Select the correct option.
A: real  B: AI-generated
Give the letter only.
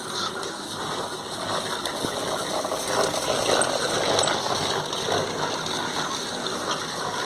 A